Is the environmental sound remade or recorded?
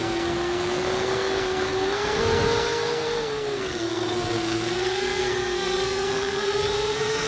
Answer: remade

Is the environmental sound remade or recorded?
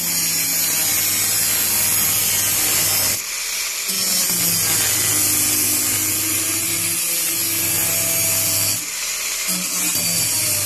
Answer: recorded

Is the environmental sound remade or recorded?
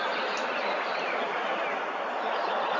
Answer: recorded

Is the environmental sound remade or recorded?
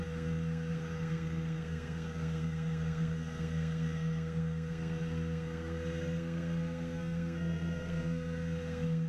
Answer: remade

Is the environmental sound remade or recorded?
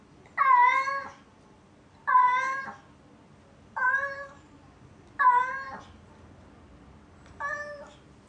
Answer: recorded